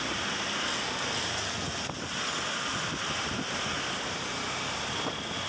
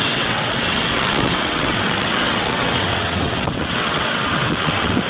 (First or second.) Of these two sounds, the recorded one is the first